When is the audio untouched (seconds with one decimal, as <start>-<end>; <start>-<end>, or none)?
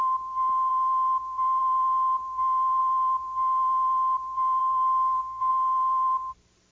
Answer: 0.0-4.6; 5.5-6.7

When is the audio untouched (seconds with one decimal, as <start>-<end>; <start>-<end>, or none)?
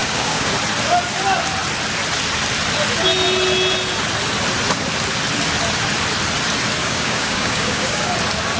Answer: 0.5-6.8; 8.1-8.6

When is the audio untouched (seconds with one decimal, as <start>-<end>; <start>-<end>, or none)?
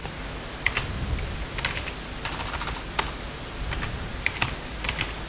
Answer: 0.0-5.3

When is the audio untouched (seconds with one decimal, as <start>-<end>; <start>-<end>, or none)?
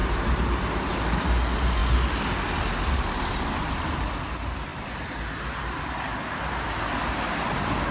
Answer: 0.0-4.7; 5.9-7.9